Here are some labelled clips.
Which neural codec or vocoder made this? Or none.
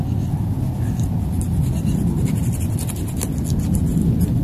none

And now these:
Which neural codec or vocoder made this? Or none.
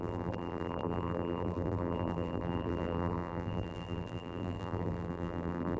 vocoder, BigVGAN v2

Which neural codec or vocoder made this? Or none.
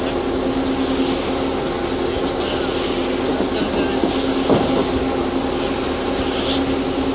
none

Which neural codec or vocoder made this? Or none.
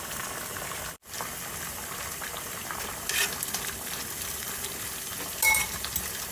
none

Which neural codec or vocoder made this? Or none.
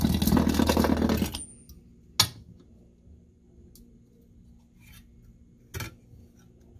none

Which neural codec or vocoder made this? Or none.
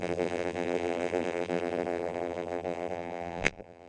vocoder, BigVGAN v2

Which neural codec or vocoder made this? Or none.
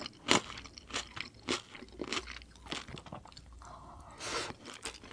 none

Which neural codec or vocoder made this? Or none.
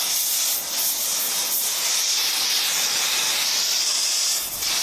none